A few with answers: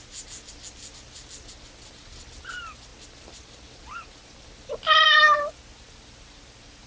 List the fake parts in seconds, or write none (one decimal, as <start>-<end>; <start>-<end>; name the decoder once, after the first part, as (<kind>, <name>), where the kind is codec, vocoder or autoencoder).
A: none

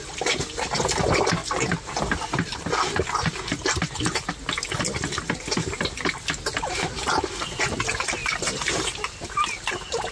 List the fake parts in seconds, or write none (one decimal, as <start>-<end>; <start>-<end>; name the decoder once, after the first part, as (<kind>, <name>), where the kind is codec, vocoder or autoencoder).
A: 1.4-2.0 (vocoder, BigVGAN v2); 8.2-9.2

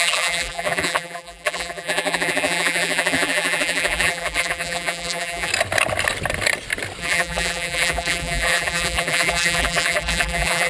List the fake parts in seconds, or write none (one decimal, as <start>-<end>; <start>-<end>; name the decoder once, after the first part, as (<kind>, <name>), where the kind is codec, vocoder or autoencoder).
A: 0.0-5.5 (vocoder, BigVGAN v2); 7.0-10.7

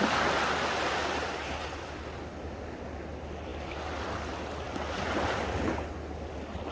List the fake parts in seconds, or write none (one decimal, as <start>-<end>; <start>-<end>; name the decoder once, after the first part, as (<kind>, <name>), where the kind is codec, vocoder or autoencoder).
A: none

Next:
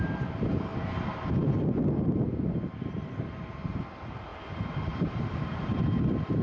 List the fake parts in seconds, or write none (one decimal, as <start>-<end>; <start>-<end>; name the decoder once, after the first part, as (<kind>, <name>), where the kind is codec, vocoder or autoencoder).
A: 0.0-0.7 (vocoder, BigVGAN v2); 2.9-6.4